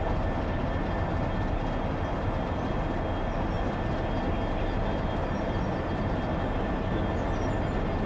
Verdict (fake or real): real